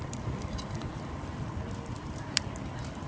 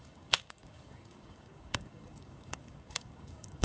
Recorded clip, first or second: first